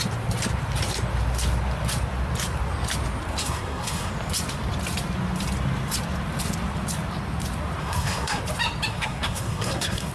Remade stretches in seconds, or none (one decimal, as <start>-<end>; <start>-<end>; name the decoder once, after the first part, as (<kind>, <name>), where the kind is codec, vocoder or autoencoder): 3.4-4.1 (codec, SNAC); 7.8-8.4; 8.9-10.1